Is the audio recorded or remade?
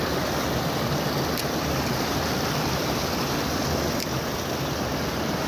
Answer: recorded